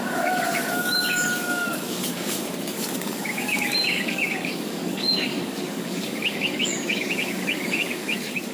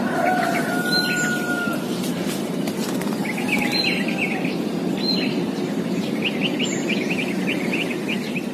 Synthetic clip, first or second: first